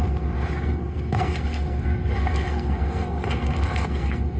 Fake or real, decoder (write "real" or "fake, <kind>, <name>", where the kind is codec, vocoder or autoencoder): fake, codec, SNAC